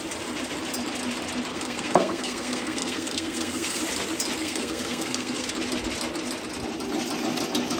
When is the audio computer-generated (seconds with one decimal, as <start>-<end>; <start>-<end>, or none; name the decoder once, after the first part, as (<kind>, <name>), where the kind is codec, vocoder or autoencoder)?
1.5-3.8 (codec, SNAC); 4.4-5.5